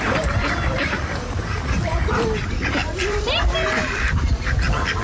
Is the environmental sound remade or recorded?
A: remade